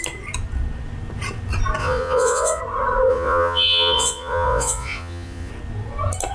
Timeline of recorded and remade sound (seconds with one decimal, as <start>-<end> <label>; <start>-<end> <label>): 0.0-1.8 recorded; 1.8-2.6 remade; 2.6-3.1 recorded; 3.1-5.5 remade; 5.5-6.3 recorded